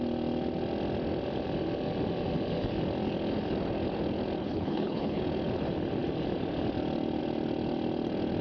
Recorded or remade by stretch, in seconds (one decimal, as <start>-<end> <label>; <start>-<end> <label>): 0.0-4.4 recorded; 4.4-5.2 remade; 5.2-8.4 recorded